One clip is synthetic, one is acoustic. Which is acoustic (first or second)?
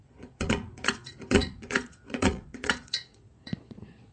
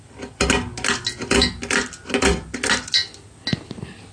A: second